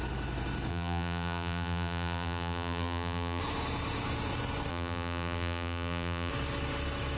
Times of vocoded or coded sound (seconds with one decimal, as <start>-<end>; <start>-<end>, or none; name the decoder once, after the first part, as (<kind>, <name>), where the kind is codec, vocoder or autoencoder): 0.7-3.4 (vocoder, BigVGAN v2); 4.7-6.3